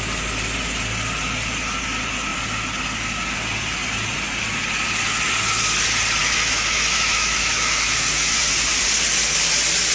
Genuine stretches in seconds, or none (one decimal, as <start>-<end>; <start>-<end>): 0.0-6.2; 8.4-9.9